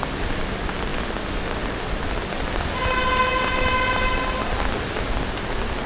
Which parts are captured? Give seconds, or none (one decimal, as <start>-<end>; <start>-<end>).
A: 0.0-5.9